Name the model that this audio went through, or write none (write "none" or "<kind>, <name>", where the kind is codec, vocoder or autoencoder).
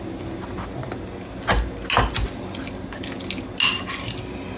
none